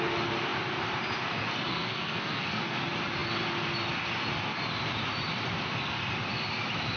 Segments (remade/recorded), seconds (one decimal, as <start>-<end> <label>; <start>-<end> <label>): 0.0-1.7 recorded; 1.7-2.6 remade; 2.6-7.0 recorded